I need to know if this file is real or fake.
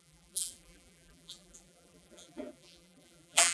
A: fake